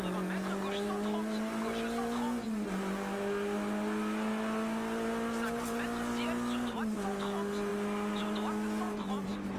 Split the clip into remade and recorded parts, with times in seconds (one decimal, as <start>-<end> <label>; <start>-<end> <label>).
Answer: 0.0-9.6 recorded